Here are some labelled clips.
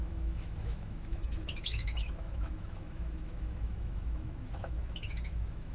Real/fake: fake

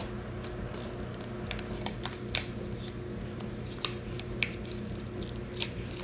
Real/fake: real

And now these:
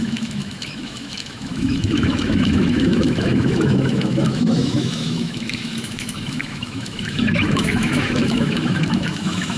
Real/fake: fake